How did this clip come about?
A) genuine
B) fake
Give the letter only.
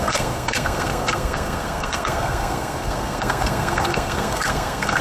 B